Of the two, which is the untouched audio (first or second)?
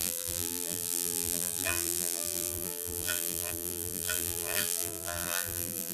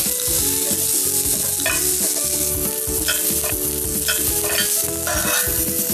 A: second